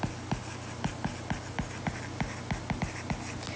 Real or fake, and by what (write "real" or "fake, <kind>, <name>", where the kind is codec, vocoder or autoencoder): real